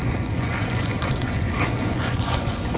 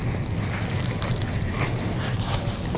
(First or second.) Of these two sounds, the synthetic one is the first